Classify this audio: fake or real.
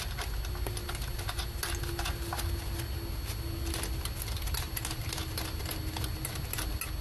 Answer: real